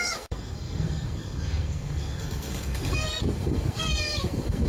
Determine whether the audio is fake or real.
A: fake